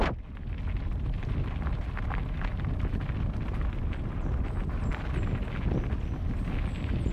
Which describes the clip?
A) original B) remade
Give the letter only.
A